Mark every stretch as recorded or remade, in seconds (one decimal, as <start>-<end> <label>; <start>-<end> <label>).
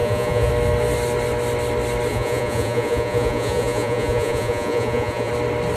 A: 0.0-0.5 remade; 0.5-2.1 recorded; 2.1-5.3 remade; 5.3-5.8 recorded